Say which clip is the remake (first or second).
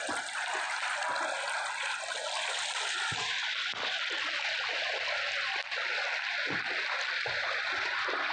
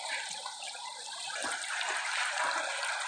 second